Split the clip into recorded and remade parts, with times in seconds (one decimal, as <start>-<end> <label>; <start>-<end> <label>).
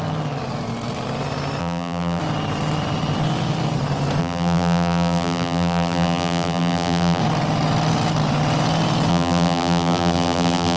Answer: 0.0-1.6 recorded; 1.6-2.2 remade; 2.2-4.2 recorded; 4.2-7.2 remade; 7.2-9.1 recorded; 9.1-10.8 remade